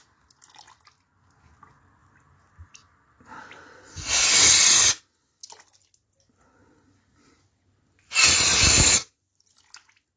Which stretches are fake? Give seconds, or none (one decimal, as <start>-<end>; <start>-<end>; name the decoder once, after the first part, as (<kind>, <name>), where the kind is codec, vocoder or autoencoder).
none